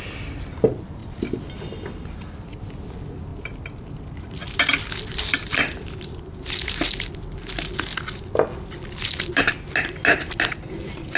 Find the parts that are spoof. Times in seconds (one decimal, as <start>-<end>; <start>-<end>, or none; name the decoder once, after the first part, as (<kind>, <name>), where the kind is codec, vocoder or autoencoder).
3.3-4.4 (vocoder, BigVGAN v2)